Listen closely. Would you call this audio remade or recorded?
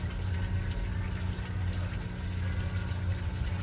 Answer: recorded